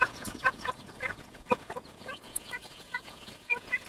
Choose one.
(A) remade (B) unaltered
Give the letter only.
A